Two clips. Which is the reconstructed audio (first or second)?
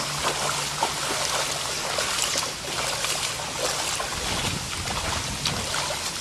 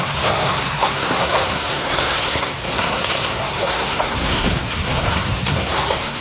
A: second